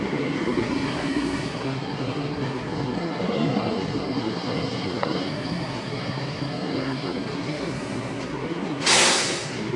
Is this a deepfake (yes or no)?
yes